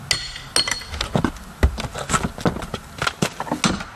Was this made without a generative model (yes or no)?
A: yes